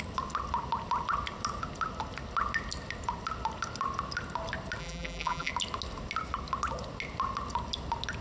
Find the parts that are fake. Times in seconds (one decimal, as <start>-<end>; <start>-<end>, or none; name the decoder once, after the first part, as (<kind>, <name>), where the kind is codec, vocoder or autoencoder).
4.8-5.5 (vocoder, BigVGAN v2)